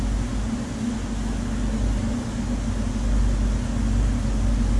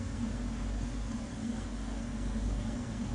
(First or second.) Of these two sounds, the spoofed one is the second